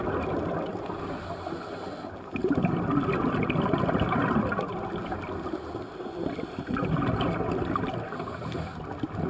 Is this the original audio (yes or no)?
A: yes